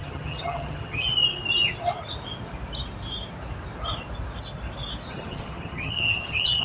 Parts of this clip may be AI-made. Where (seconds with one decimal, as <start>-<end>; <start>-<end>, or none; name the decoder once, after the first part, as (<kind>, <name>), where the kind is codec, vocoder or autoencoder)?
0.0-1.1 (vocoder, HiFi-GAN); 5.1-6.6